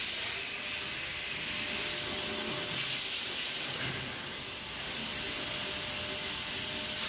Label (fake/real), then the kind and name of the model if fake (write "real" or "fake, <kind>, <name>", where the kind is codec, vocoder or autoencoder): real